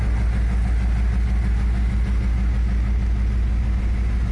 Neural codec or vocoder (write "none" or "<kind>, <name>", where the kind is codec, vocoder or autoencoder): none